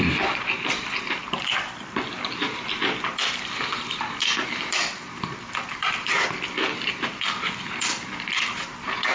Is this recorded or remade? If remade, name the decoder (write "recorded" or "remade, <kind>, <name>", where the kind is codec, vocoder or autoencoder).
remade, vocoder, BigVGAN v2